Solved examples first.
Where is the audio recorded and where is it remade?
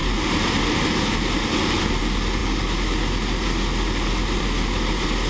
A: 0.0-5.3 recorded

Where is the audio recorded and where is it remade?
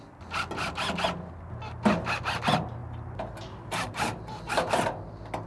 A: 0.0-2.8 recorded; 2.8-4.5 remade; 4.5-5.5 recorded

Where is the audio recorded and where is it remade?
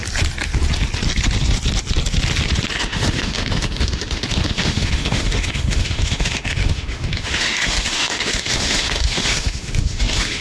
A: 0.0-2.8 recorded; 2.8-10.4 remade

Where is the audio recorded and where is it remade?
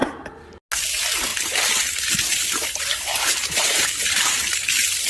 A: 0.0-2.6 recorded; 2.6-3.8 remade; 3.8-5.1 recorded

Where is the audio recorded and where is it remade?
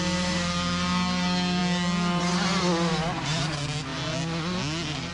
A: 0.0-5.1 recorded